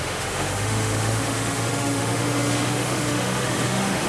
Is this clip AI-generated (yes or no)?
yes